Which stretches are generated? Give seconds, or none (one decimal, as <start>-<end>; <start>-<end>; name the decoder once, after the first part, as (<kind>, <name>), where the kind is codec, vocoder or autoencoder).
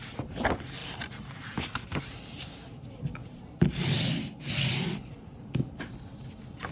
0.8-2.0 (vocoder, BigVGAN v2); 3.2-4.0